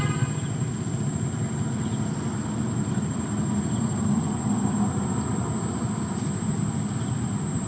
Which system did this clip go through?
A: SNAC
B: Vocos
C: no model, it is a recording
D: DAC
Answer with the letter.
C